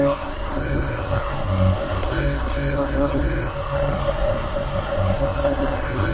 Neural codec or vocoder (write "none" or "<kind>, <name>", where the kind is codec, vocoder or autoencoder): codec, SNAC